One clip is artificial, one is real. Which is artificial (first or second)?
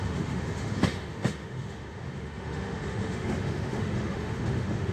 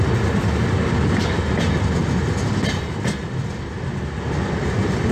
first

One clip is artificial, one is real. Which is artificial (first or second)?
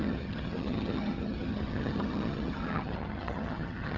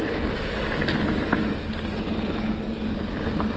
first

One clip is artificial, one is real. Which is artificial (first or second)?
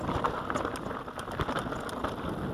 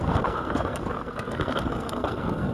second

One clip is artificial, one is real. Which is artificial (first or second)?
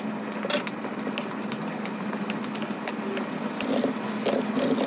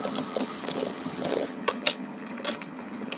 second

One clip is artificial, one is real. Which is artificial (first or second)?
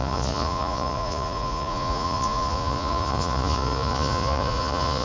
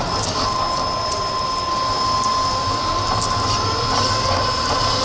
first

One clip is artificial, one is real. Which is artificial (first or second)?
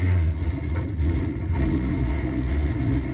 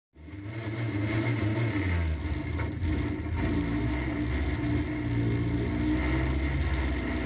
first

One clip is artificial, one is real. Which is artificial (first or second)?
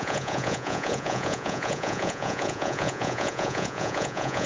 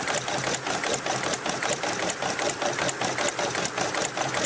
first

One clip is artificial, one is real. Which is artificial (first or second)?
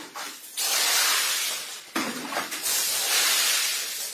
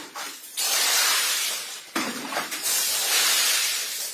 second